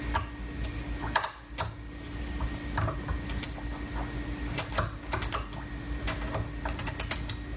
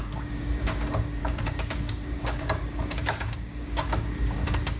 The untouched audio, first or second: first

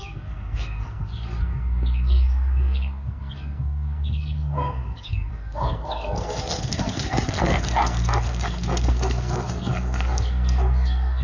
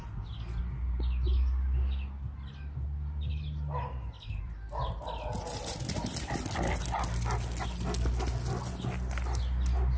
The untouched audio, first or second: second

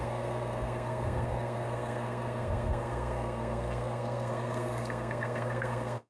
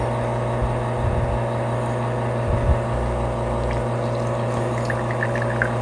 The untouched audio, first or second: second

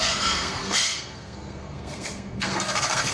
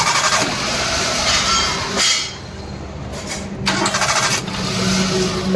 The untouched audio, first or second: second